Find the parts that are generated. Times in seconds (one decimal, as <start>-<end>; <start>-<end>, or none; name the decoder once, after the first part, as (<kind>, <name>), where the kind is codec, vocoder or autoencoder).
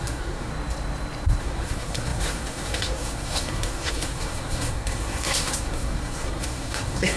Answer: 0.0-0.5 (codec, SNAC); 1.4-7.2